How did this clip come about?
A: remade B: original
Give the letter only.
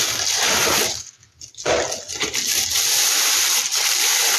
A